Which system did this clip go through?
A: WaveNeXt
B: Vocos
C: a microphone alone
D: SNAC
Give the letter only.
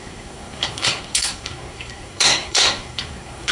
D